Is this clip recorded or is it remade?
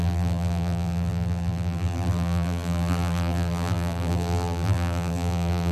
remade